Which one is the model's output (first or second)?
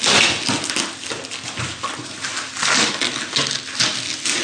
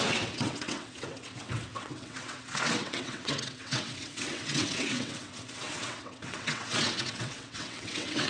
second